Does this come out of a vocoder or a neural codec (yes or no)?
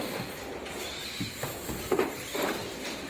no